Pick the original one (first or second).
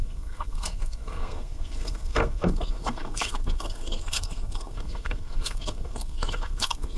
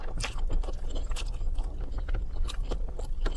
second